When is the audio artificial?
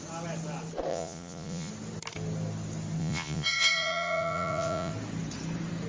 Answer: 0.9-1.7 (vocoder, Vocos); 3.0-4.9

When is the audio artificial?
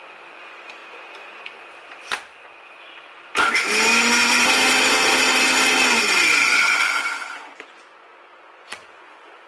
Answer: 0.0-0.8 (vocoder, Vocos); 6.0-9.5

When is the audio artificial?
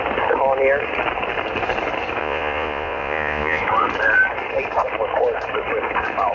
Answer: 2.2-3.6 (vocoder, Vocos)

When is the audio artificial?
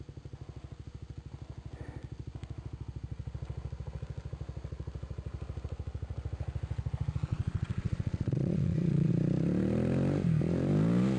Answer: 7.3-9.1 (vocoder, Vocos)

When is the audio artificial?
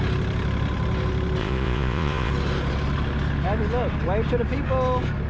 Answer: 1.4-2.3 (vocoder, Vocos)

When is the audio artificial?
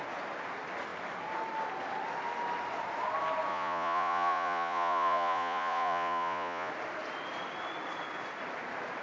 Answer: 3.5-6.7 (vocoder, Vocos)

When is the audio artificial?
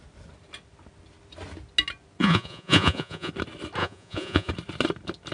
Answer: 2.2-3.3 (vocoder, Vocos); 3.8-4.5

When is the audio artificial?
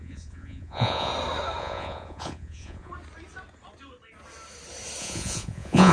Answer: 0.0-1.1 (vocoder, Vocos); 1.6-2.9; 5.0-5.9